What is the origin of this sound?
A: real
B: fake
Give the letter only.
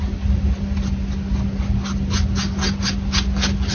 A